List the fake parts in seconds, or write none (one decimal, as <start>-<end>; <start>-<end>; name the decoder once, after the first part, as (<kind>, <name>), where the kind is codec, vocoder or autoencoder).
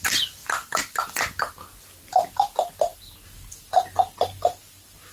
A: none